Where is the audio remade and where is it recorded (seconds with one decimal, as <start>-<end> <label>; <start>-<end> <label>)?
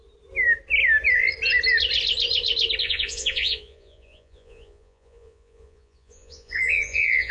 0.0-2.8 recorded; 2.8-7.3 remade